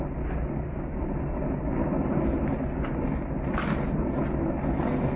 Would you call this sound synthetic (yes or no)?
no